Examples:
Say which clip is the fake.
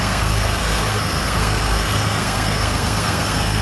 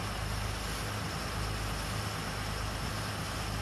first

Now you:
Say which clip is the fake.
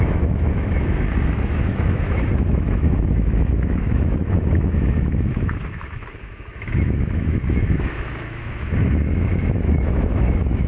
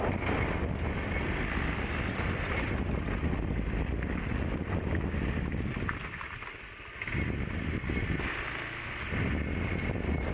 first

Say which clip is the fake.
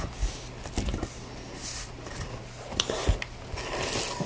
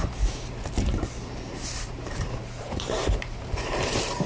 second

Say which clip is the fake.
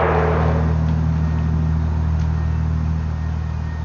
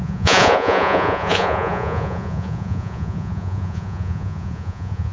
second